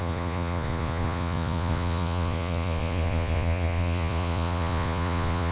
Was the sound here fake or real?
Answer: fake